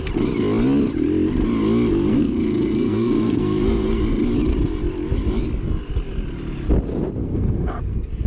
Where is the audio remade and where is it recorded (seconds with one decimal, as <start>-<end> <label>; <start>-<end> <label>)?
0.0-2.1 recorded; 2.1-4.0 remade; 4.0-7.2 recorded; 7.2-8.3 remade

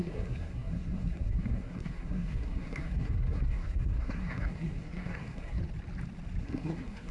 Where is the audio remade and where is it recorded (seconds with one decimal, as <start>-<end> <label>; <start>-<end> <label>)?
0.0-5.6 remade; 5.6-6.4 recorded; 6.4-7.1 remade

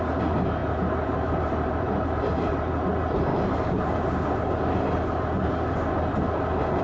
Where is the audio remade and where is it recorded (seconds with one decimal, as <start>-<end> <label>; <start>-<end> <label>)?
0.0-0.6 recorded; 0.6-2.5 remade; 2.5-3.3 recorded; 3.3-4.6 remade; 4.6-6.8 recorded

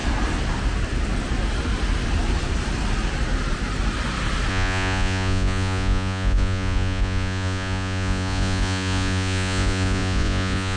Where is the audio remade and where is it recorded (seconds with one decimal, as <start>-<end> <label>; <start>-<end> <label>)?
0.0-4.5 recorded; 4.5-10.8 remade